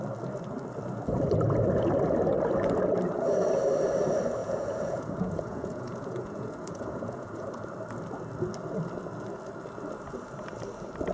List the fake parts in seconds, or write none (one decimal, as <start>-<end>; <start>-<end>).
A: 4.4-7.5